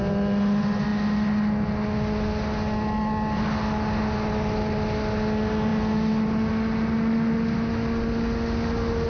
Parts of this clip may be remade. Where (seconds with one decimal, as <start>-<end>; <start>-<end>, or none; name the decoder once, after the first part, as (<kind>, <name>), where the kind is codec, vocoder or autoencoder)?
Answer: none